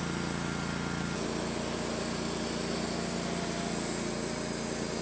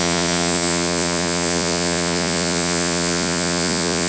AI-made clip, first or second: second